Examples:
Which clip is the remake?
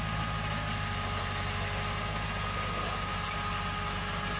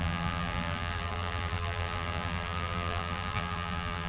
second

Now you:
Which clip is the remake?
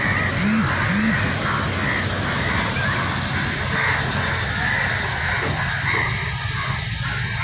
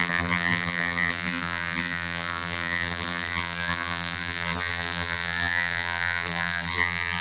second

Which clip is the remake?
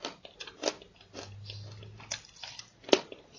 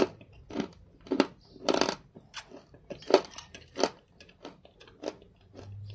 second